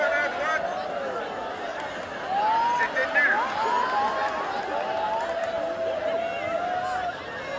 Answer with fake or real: real